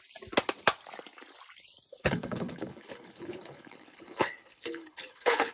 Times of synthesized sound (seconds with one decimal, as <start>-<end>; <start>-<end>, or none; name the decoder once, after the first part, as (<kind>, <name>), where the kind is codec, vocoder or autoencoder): 1.9-5.5 (codec, HILCodec)